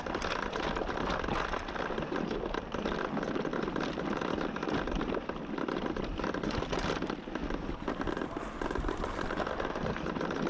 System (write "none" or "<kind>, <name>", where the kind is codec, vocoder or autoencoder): none